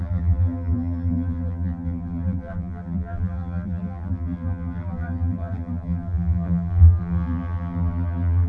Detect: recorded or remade remade